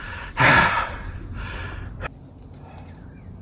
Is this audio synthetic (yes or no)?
no